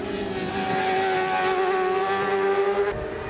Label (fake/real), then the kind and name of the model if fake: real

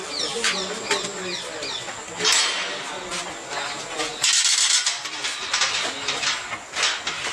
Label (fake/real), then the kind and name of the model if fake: real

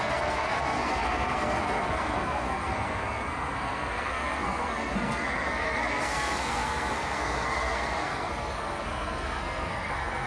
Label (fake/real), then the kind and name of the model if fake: fake, codec, SNAC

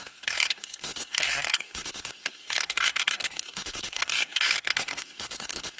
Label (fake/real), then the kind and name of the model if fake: fake, codec, SNAC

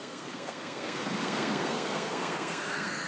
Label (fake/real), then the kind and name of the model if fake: fake, codec, SNAC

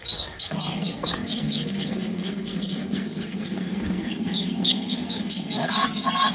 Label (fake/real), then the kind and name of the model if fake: fake, codec, SNAC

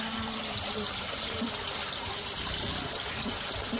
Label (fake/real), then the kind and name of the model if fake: real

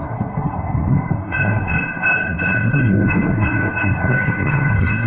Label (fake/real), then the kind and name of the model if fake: fake, codec, SNAC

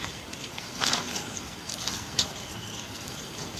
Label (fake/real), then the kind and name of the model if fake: fake, codec, SNAC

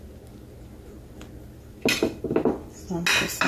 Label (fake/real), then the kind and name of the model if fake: real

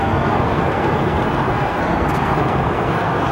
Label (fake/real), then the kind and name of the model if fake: fake, codec, SNAC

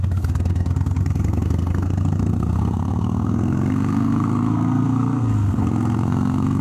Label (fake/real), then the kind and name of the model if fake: fake, codec, SNAC